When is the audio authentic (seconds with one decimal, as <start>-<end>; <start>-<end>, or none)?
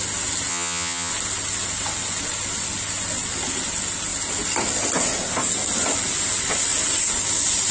0.0-0.5; 1.1-7.7